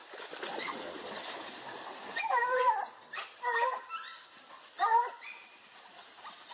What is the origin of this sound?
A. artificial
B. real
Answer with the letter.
B